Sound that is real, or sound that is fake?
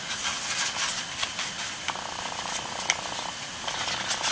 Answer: real